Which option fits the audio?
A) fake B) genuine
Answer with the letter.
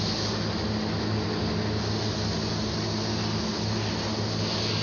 B